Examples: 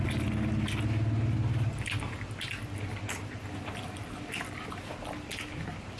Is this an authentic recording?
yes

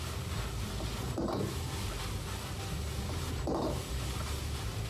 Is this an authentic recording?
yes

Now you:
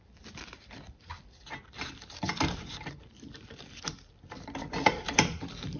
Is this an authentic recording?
no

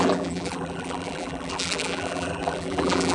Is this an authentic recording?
no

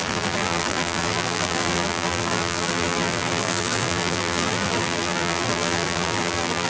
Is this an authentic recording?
no